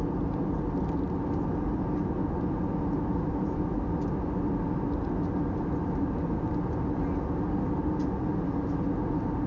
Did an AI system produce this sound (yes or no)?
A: no